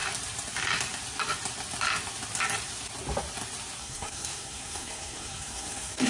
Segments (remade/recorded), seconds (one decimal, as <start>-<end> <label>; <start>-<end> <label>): 0.0-3.8 recorded; 3.8-6.1 remade